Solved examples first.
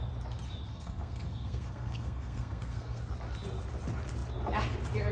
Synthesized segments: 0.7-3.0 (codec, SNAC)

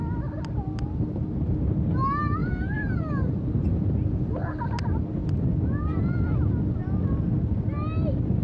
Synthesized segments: none

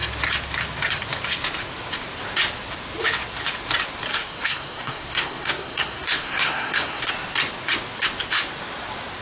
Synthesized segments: 4.1-7.1 (codec, SNAC)

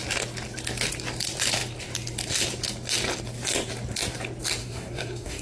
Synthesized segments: 4.6-5.4 (codec, SNAC)

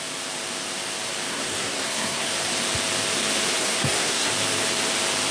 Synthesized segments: 1.3-2.3 (codec, SNAC); 3.6-4.3